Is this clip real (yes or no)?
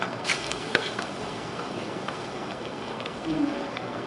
no